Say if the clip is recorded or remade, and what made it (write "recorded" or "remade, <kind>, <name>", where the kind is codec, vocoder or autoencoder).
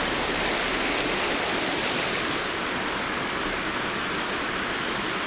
recorded